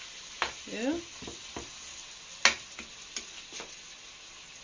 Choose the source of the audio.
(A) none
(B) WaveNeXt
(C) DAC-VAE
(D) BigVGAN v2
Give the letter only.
A